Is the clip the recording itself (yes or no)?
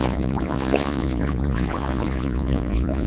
no